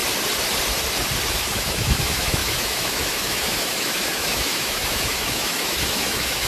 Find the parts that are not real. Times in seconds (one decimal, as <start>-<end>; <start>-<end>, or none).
1.3-6.5